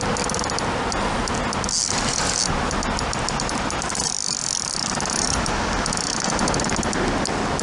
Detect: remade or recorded recorded